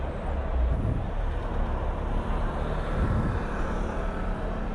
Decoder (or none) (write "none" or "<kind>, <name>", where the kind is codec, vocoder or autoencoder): none